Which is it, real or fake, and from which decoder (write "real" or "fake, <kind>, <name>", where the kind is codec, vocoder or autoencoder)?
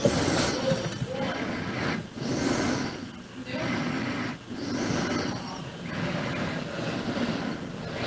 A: real